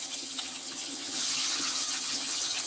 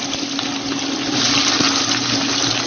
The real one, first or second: second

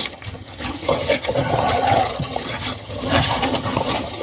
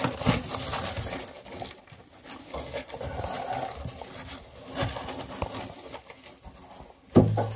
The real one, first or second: second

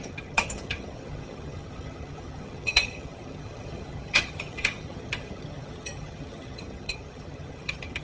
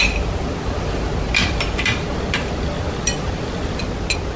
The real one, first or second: second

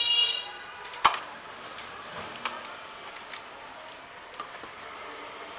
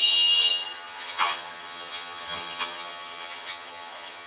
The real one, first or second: first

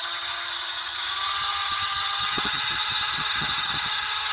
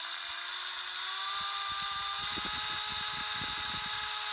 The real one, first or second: second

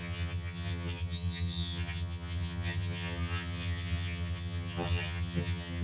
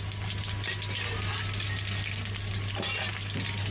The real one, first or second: second